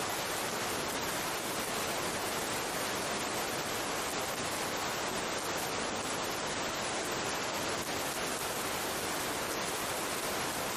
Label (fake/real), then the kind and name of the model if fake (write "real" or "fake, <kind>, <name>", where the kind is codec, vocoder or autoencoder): real